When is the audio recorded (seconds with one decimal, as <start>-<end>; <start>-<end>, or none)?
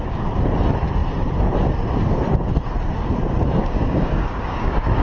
0.0-3.6